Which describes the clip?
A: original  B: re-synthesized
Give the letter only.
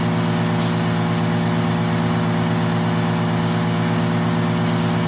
A